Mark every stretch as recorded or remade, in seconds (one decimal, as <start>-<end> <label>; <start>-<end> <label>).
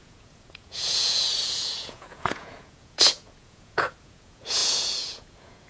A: 0.0-5.7 remade